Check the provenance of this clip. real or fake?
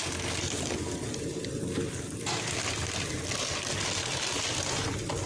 real